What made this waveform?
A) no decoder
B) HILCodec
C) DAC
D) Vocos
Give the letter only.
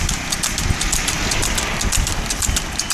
A